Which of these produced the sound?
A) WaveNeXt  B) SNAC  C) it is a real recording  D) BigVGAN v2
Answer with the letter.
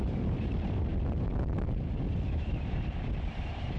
D